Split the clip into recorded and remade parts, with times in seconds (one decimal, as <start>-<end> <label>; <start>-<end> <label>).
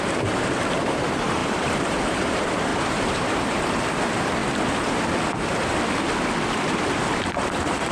0.0-4.4 remade; 4.4-6.5 recorded; 6.5-7.9 remade